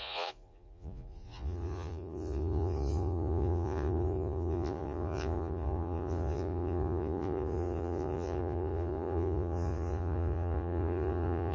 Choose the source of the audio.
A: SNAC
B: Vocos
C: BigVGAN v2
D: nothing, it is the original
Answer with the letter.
B